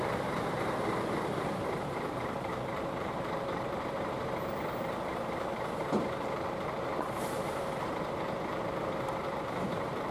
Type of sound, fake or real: fake